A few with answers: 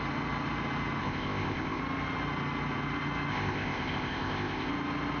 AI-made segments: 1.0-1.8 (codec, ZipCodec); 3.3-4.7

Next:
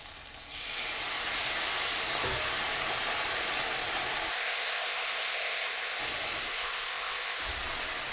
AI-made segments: 4.3-6.0 (codec, ZipCodec); 6.5-7.4

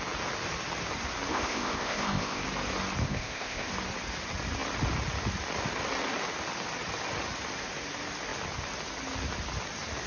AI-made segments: 1.3-2.4 (codec, ZipCodec); 3.0-3.7

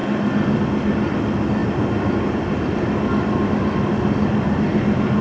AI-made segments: none

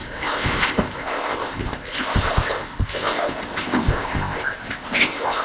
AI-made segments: 0.0-5.4 (codec, ZipCodec)

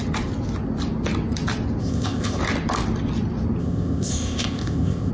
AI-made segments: 1.8-2.4 (codec, ZipCodec); 3.6-5.1

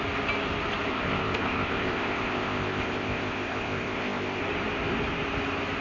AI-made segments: 0.9-4.4 (codec, ZipCodec)